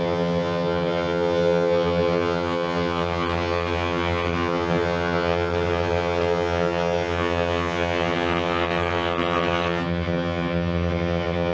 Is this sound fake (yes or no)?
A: yes